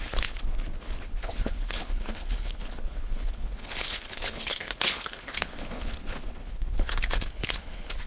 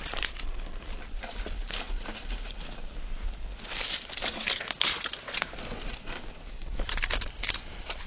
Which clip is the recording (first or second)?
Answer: second